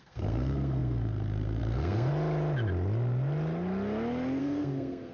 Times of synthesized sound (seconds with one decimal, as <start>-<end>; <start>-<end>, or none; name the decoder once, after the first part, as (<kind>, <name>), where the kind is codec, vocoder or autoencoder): 0.0-2.1 (codec, SNAC); 4.4-5.1